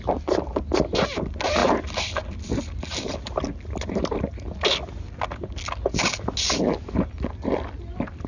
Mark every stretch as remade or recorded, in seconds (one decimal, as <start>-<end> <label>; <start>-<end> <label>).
0.0-8.3 recorded